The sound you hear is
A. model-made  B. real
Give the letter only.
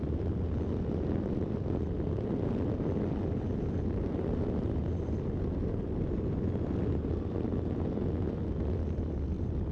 B